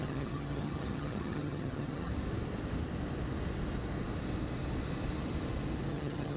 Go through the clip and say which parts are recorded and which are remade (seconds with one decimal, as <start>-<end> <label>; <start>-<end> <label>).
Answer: 0.0-2.1 remade; 2.1-5.9 recorded; 5.9-6.4 remade